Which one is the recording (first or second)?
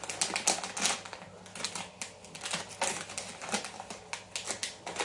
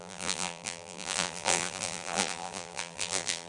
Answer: first